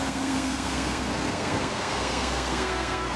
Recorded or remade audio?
remade